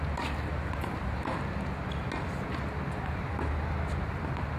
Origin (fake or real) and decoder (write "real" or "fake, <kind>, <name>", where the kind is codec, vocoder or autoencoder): real